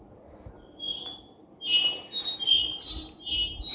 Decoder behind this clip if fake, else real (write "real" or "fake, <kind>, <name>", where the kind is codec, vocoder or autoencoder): real